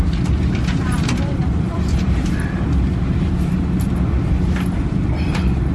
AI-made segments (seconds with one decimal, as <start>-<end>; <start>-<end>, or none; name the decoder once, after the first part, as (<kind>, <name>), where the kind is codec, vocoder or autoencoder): 1.4-2.6 (vocoder, BigVGAN v2)